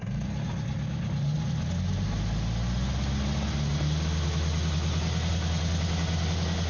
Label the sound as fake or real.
real